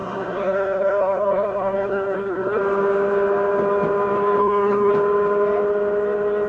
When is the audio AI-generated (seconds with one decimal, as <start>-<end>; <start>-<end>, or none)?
0.0-2.6; 4.4-4.9